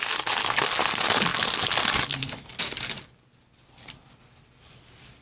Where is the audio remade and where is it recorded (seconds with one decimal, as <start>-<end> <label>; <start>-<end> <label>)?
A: 0.0-5.2 recorded